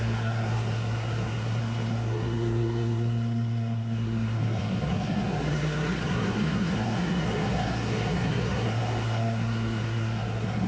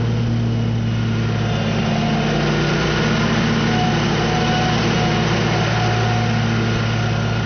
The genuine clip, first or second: second